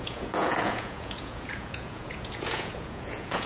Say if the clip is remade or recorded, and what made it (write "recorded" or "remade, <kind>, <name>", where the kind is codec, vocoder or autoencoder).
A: remade, vocoder, Vocos